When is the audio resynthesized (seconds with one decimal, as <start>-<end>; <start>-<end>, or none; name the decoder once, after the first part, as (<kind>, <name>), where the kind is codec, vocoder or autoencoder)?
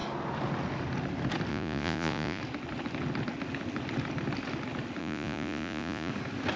1.5-2.4 (vocoder, Vocos); 5.0-6.1